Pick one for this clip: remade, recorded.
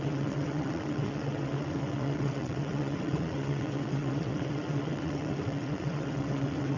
remade